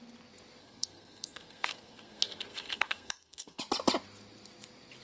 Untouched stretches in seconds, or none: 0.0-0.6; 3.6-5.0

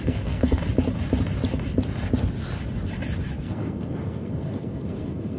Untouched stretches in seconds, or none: 0.6-3.4

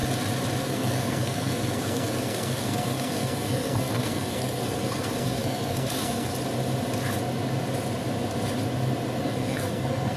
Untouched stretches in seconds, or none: 0.0-0.6; 6.3-9.2

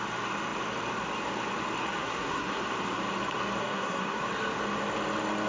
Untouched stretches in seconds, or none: 0.0-2.0; 2.6-3.6; 4.2-5.5